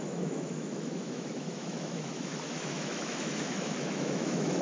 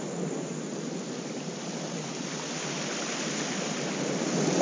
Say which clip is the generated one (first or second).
first